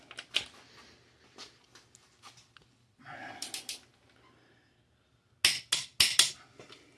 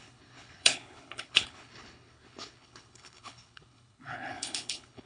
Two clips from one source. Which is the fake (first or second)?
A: second